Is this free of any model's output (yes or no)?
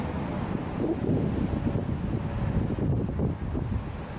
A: yes